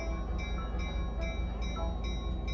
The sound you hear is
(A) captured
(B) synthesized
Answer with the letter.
A